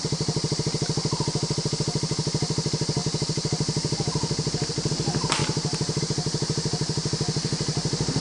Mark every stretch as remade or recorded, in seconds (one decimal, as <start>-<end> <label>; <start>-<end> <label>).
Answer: 0.0-5.4 recorded; 5.4-6.0 remade; 6.0-8.2 recorded